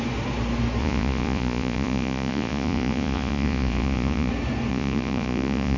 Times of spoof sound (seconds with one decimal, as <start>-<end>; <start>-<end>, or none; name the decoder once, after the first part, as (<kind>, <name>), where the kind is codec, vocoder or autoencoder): 0.8-4.3 (vocoder, Vocos); 4.7-5.8